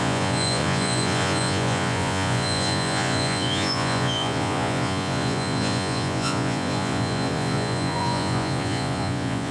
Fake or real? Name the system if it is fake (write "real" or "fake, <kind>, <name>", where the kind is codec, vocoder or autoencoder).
fake, vocoder, Vocos